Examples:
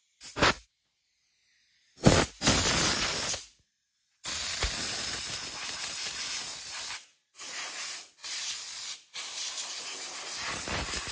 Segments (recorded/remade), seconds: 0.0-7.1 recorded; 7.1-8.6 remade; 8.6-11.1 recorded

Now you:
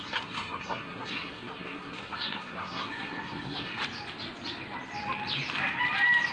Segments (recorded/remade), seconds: 0.0-3.8 remade; 3.8-6.3 recorded

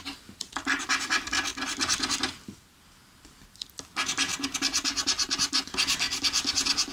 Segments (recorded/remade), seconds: 0.0-6.9 recorded

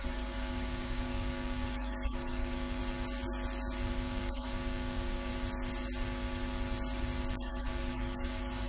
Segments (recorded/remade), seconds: 0.0-2.8 remade; 2.8-3.9 recorded; 3.9-5.3 remade; 5.3-7.3 recorded; 7.3-8.7 remade

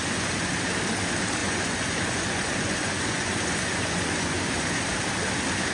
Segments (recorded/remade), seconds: 0.0-0.5 remade; 0.5-1.4 recorded; 1.4-4.8 remade; 4.8-5.7 recorded